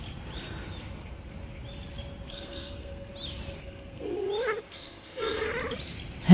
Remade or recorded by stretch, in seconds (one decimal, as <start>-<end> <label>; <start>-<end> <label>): 0.0-2.3 recorded; 2.3-3.1 remade; 3.1-3.6 recorded; 3.6-4.3 remade; 4.3-4.7 recorded; 4.7-5.5 remade; 5.5-6.3 recorded